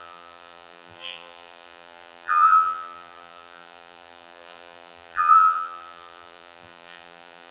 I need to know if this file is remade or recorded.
remade